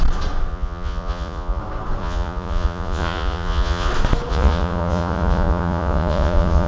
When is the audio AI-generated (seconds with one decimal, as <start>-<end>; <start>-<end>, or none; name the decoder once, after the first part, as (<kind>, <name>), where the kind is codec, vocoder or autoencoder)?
0.5-1.6 (vocoder, Vocos); 2.0-3.9; 4.3-6.7